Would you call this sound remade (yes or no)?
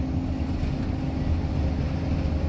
no